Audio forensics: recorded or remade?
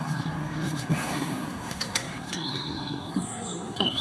remade